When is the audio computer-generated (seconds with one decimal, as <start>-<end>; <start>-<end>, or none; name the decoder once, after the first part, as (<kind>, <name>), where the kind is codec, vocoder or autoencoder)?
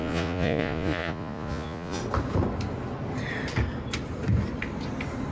0.0-2.0 (vocoder, Vocos)